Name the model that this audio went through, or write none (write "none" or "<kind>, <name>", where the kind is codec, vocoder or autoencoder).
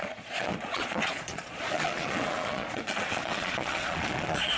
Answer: vocoder, Vocos